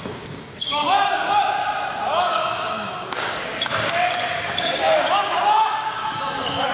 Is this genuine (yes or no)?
no